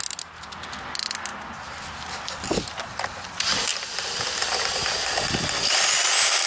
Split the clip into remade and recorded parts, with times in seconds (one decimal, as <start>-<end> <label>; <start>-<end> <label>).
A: 0.0-6.5 recorded